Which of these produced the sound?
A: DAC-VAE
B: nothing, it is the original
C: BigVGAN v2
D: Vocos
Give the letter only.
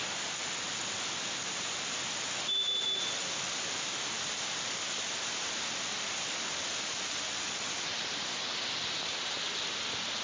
B